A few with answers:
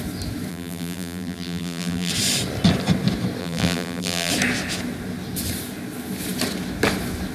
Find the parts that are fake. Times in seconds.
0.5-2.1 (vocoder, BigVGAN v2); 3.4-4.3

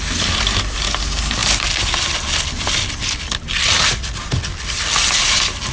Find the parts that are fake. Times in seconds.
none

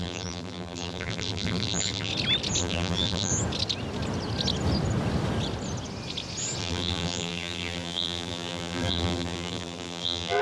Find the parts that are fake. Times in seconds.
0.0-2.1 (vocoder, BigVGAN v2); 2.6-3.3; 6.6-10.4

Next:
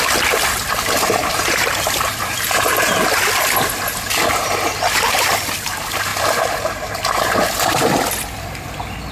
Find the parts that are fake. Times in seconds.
1.2-3.2 (vocoder, BigVGAN v2); 6.1-7.2

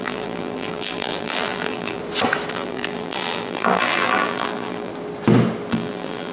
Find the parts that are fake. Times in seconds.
0.0-2.0 (vocoder, BigVGAN v2); 2.5-4.9; 5.7-6.3

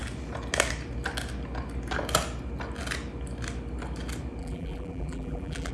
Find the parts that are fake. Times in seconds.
4.4-5.7 (vocoder, BigVGAN v2)

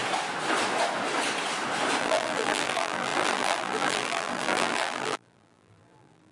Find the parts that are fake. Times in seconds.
2.0-6.3 (vocoder, BigVGAN v2)

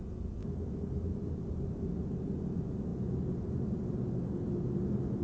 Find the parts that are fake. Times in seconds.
none